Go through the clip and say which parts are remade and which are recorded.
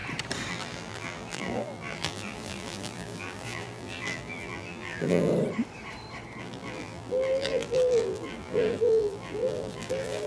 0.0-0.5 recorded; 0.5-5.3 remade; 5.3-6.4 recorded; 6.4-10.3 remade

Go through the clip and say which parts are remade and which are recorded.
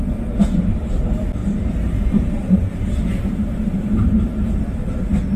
0.0-1.4 recorded; 1.4-4.6 remade; 4.6-5.4 recorded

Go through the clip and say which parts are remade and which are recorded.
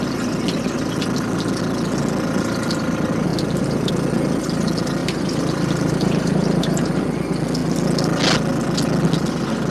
0.0-3.3 recorded; 3.3-3.9 remade; 3.9-5.0 recorded; 5.0-7.0 remade; 7.0-9.7 recorded